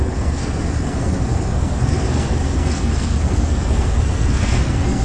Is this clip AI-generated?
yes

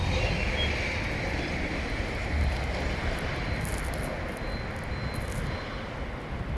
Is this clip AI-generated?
no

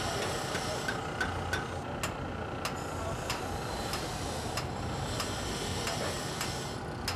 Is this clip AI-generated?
no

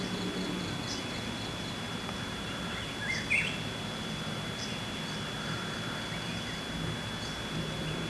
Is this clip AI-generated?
no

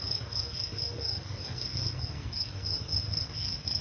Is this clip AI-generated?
yes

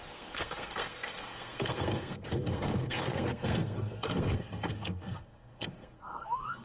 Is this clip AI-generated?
yes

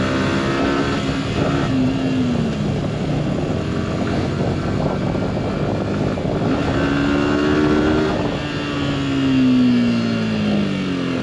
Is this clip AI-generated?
no